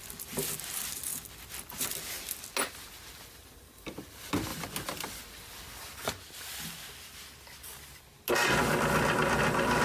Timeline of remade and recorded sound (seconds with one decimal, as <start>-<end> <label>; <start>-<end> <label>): 0.0-9.8 recorded